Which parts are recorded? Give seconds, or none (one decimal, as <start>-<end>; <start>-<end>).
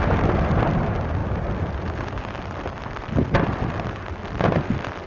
0.0-5.1